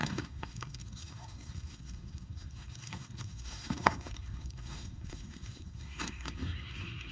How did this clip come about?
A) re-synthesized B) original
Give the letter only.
A